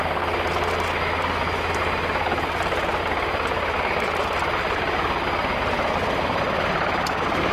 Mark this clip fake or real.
real